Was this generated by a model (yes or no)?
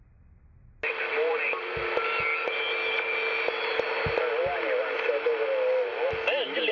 no